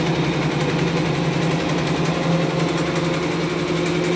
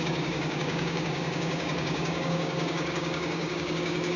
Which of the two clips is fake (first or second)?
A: second